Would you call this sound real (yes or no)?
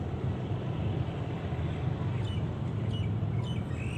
yes